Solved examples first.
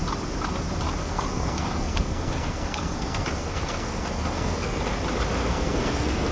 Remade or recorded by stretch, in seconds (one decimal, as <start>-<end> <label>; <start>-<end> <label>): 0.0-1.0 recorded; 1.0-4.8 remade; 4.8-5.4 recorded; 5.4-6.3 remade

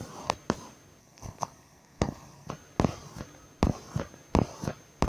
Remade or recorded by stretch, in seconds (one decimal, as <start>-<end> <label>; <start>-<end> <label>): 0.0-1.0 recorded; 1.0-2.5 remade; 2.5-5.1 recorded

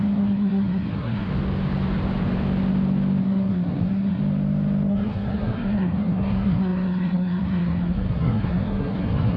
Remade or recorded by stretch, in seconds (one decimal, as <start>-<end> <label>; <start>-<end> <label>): 0.0-1.3 remade; 1.3-3.2 recorded; 3.2-4.2 remade; 4.2-4.9 recorded; 4.9-9.4 remade

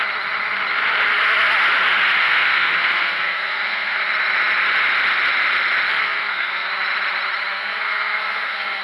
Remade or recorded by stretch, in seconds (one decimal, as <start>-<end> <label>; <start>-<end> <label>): 0.0-2.2 recorded; 2.2-4.0 remade; 4.0-6.0 recorded; 6.0-6.7 remade; 6.7-7.5 recorded; 7.5-8.8 remade